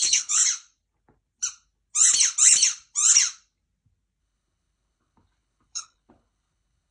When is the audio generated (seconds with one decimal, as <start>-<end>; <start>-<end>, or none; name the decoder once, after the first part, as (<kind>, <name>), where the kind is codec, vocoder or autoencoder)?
0.0-0.4 (codec, HILCodec); 4.2-6.9